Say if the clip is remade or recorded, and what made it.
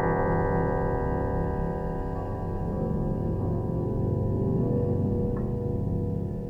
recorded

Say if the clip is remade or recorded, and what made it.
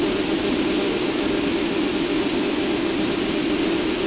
recorded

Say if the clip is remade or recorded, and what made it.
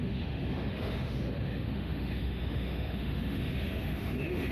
remade, autoencoder, DAC-VAE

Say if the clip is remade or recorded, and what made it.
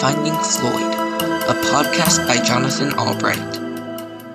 recorded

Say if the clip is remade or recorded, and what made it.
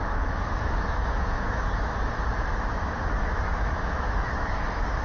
remade, autoencoder, DAC-VAE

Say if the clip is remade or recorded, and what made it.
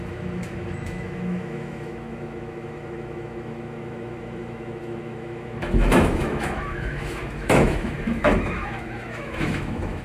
remade, autoencoder, DAC-VAE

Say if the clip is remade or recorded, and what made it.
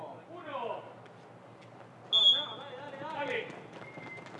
recorded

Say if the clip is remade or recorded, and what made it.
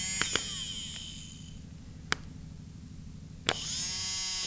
recorded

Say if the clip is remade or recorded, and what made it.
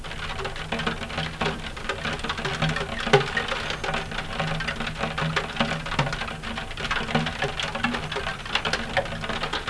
recorded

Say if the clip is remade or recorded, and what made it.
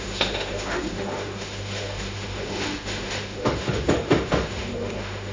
remade, autoencoder, DAC-VAE